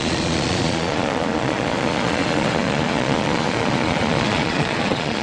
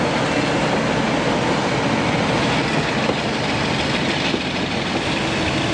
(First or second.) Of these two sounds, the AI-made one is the first